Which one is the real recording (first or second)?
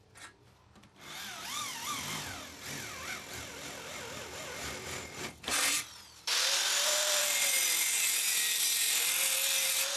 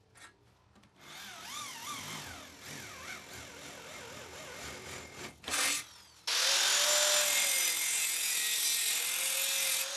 second